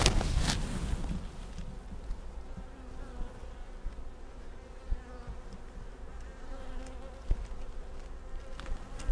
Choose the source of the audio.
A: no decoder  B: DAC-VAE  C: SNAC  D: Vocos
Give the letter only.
A